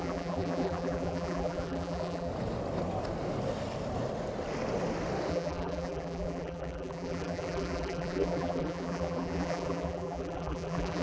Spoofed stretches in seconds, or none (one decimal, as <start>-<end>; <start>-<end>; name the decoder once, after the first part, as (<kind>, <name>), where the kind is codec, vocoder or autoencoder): 0.0-2.3 (vocoder, BigVGAN v2); 5.3-11.0